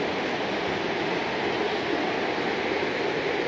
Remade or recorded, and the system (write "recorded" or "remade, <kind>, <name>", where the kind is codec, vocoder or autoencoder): recorded